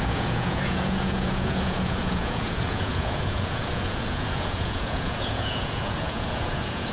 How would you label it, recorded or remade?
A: remade